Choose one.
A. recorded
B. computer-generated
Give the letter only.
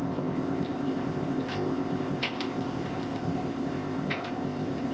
B